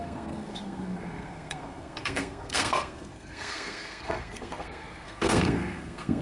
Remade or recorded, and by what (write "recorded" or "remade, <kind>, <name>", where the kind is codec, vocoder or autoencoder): remade, codec, SNAC